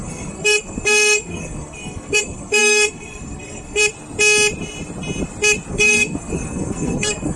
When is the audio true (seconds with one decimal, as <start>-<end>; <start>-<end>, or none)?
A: 3.8-5.7